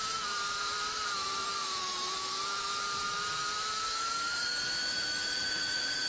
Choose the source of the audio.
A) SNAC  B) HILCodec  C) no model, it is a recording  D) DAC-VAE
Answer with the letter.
D